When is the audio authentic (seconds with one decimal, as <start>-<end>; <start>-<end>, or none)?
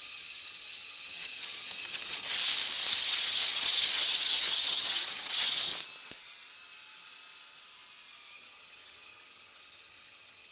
2.4-2.9; 5.7-8.3